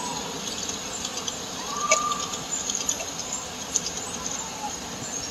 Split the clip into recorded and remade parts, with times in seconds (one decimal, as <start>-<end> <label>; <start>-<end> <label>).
0.0-5.3 recorded